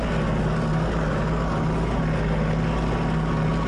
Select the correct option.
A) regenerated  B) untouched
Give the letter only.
B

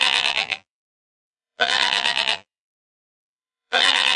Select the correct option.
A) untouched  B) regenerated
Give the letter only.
B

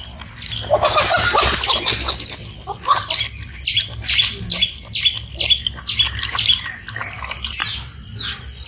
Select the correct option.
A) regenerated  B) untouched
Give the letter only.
B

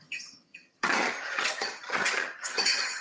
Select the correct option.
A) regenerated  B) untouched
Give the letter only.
A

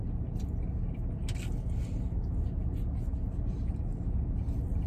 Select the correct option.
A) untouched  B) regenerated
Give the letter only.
A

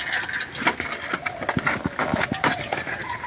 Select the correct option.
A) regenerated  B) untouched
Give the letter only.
B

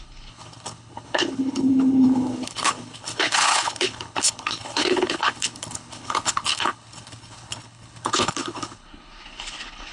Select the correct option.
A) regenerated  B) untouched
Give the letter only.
A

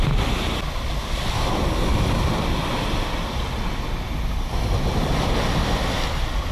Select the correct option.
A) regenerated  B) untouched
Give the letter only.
B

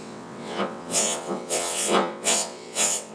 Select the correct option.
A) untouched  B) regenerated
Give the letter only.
B